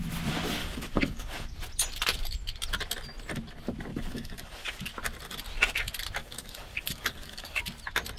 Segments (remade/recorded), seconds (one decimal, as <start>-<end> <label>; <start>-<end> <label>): 0.0-0.6 recorded; 0.6-1.6 remade; 1.6-3.9 recorded; 3.9-4.9 remade; 4.9-6.2 recorded; 6.2-7.6 remade; 7.6-8.2 recorded